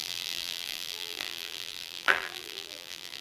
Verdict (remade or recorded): remade